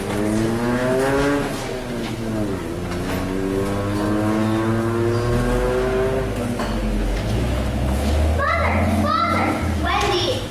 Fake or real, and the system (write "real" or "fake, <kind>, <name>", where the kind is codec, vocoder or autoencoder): real